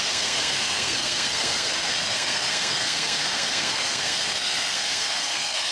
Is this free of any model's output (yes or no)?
no